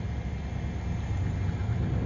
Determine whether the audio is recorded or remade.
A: recorded